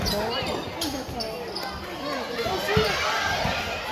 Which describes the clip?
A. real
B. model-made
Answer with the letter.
A